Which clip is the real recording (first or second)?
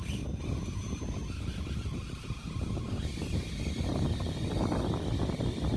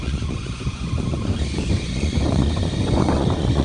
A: first